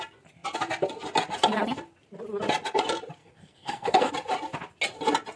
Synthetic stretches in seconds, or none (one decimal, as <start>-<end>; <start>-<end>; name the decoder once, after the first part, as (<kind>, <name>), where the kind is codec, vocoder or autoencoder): 3.2-4.1 (codec, SNAC)